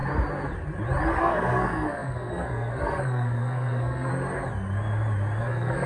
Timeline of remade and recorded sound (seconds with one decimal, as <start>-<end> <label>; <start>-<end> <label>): 0.0-1.2 recorded; 1.2-4.1 remade; 4.1-5.4 recorded; 5.4-5.9 remade